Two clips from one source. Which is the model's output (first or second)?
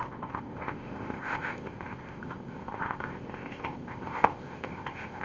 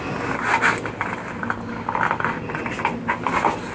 first